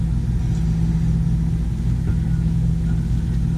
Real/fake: real